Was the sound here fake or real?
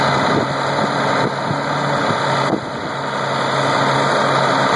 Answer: real